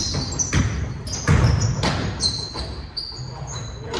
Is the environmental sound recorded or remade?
recorded